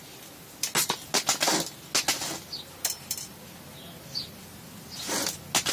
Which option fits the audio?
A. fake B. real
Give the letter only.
B